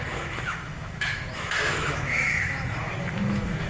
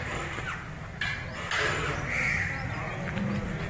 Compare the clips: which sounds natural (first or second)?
second